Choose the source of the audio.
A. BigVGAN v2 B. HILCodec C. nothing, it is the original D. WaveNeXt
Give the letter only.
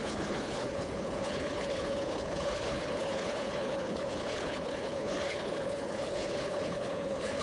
B